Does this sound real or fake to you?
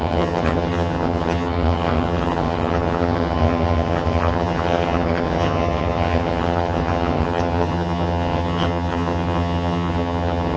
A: fake